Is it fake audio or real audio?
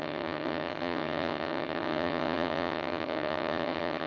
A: fake